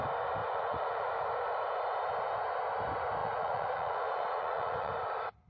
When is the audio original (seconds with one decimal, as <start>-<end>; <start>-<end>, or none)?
0.0-0.4; 1.0-3.2; 4.9-5.5